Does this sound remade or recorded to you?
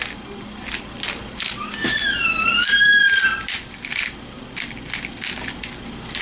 recorded